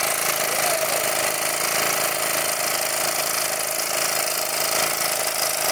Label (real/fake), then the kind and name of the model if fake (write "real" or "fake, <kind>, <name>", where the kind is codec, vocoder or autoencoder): real